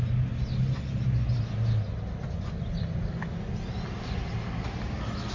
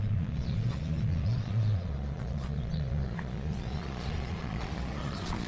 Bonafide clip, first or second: first